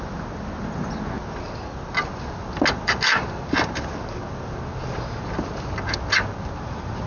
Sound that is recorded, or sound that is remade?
recorded